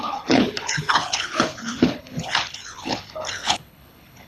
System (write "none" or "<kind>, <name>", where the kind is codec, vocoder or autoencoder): codec, HILCodec